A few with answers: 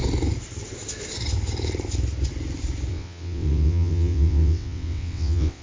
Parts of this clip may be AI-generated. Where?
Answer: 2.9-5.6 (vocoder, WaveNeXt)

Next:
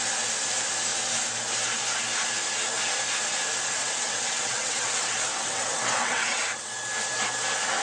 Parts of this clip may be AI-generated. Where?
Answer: 3.8-6.7 (vocoder, WaveNeXt)

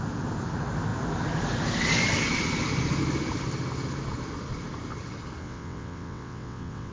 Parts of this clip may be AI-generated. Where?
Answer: 5.4-6.9 (vocoder, WaveNeXt)

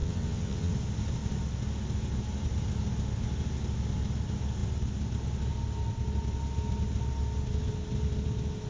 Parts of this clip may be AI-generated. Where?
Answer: 0.0-0.7 (vocoder, WaveNeXt)

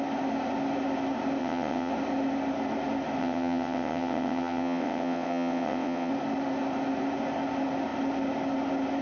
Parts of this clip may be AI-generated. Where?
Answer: 1.4-1.9 (vocoder, WaveNeXt); 3.2-6.1